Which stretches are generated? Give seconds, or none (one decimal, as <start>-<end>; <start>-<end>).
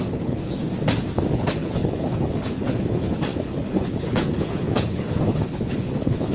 0.0-0.6; 1.3-6.3